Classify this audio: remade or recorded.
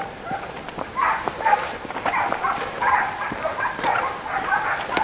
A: recorded